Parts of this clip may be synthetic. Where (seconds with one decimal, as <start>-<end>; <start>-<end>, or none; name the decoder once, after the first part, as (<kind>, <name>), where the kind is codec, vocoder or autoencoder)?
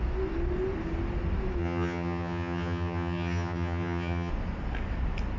1.6-4.3 (vocoder, HiFi-GAN)